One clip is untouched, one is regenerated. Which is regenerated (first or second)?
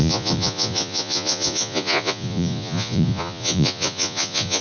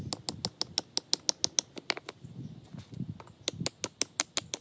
first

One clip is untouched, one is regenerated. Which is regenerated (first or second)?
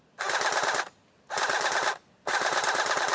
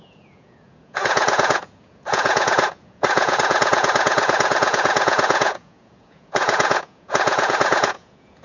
second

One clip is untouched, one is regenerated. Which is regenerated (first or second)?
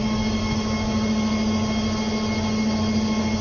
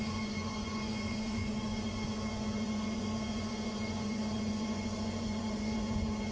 second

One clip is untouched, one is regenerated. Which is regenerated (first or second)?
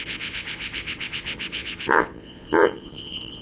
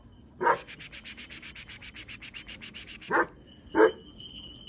first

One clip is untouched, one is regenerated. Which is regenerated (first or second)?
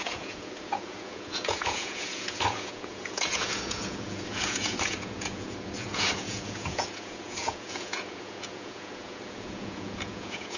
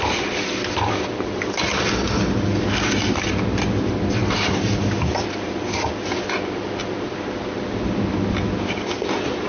first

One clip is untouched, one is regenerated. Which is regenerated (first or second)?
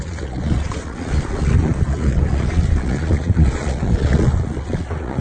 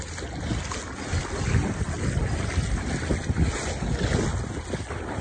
first